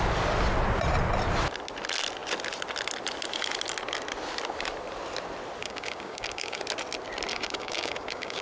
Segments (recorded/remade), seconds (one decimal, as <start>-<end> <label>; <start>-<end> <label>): 0.0-5.6 recorded; 5.6-6.6 remade; 6.6-7.3 recorded; 7.3-8.4 remade